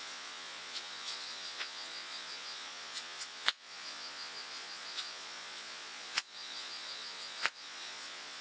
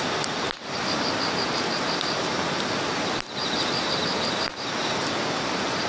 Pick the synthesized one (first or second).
first